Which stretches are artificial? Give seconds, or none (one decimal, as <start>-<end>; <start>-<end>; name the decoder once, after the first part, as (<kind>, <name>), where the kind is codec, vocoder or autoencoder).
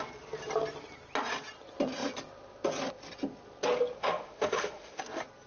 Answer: 4.0-5.0 (autoencoder, DAC-VAE)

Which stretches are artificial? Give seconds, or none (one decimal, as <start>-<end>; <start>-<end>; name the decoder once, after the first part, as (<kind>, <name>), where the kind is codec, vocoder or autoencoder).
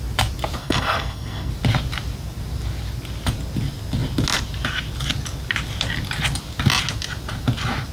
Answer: 0.6-1.5 (codec, SNAC)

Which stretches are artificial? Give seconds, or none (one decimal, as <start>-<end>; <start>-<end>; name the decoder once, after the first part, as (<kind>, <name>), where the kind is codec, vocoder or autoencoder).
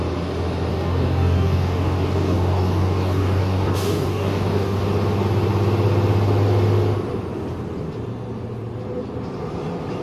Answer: 0.7-4.8 (codec, DAC)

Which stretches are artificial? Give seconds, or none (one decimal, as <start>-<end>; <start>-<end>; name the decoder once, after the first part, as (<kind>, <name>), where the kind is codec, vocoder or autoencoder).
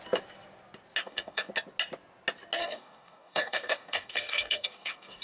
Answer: 1.0-1.5 (codec, DAC); 2.6-5.2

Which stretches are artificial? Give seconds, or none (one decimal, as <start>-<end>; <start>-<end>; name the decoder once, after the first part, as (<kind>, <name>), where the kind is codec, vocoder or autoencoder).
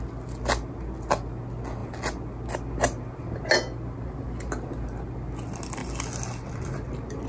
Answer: none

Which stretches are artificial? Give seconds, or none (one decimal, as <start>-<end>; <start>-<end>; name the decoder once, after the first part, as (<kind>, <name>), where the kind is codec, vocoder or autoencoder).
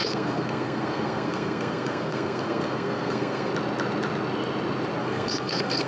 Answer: 0.0-3.5 (codec, SNAC); 5.0-5.9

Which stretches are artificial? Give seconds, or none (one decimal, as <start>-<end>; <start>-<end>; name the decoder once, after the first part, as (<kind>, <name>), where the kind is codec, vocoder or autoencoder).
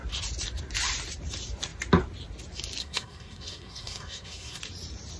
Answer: 2.8-4.6 (codec, SNAC)